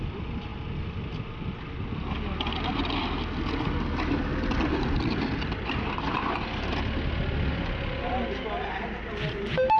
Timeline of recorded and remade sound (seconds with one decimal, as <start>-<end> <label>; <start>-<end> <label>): 0.0-9.8 recorded